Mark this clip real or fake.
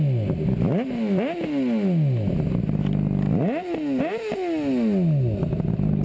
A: real